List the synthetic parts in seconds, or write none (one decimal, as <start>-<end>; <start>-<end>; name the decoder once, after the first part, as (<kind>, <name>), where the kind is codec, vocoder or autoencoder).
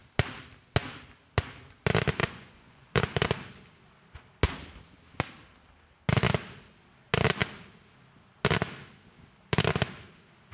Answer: 2.2-3.0 (vocoder, Vocos)